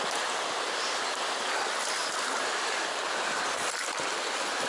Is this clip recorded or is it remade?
recorded